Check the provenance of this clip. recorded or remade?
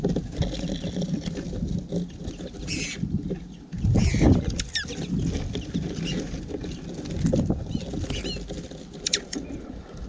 recorded